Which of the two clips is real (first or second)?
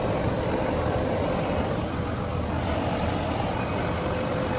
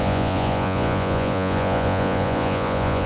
first